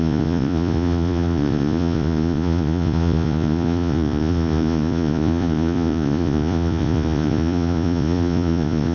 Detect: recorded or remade remade